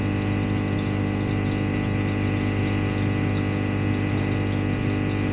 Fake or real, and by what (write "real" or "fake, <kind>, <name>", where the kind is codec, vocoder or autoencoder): real